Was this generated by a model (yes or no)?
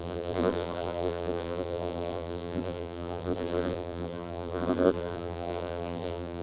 yes